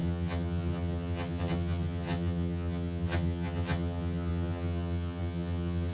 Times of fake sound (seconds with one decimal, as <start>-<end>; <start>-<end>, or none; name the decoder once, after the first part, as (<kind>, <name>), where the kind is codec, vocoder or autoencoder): 0.0-5.9 (vocoder, HiFi-GAN)